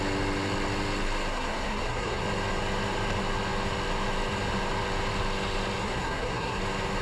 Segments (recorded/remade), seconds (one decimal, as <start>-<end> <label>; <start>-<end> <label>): 0.0-1.3 recorded; 1.3-2.2 remade; 2.2-5.8 recorded; 5.8-6.6 remade; 6.6-7.0 recorded

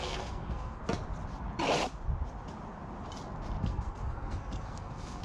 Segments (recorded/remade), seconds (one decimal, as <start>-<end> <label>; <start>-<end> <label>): 0.0-0.8 remade; 0.8-3.6 recorded; 3.6-5.2 remade

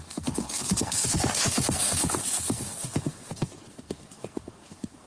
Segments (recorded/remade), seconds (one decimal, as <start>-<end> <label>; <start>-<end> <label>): 0.0-5.1 remade

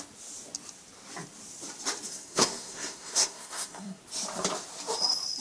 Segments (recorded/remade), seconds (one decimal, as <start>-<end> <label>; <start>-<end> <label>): 0.0-2.1 recorded; 2.1-4.0 remade; 4.0-5.4 recorded

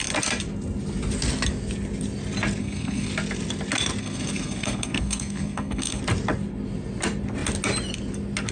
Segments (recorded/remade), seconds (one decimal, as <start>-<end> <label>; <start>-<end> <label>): 0.0-2.6 recorded; 2.6-3.1 remade; 3.1-4.0 recorded; 4.0-6.0 remade; 6.0-8.5 recorded

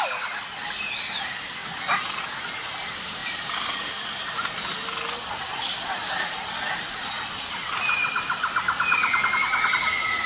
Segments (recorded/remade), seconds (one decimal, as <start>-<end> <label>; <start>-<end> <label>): 0.0-10.3 recorded